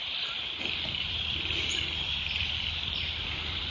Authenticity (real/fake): fake